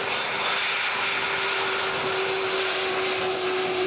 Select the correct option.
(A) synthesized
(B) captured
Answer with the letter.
B